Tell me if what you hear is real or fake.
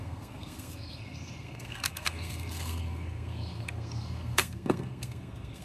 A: fake